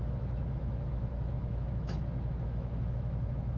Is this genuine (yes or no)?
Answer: no